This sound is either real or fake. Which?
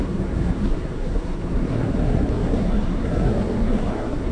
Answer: fake